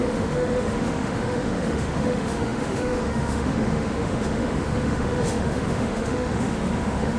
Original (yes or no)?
no